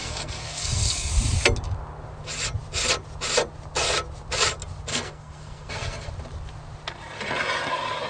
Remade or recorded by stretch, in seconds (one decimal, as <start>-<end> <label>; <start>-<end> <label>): 0.0-1.1 remade; 1.1-4.9 recorded; 4.9-6.1 remade; 6.1-8.1 recorded